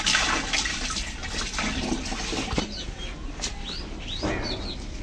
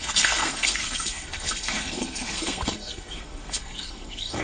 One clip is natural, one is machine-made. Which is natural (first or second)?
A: first